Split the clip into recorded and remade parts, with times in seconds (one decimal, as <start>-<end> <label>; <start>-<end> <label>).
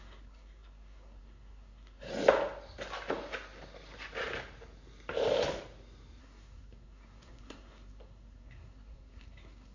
0.0-2.1 remade; 2.1-6.2 recorded; 6.2-9.7 remade